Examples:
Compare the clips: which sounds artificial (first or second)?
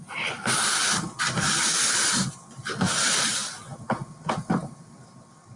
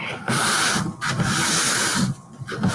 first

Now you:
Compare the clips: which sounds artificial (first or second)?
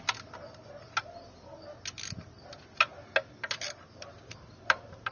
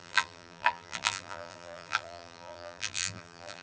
second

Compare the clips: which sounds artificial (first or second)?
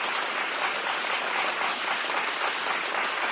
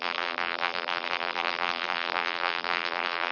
second